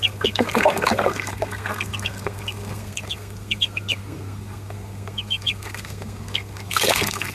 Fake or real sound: fake